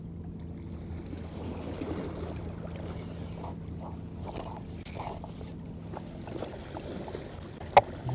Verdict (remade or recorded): recorded